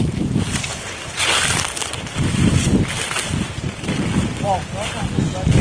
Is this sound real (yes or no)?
yes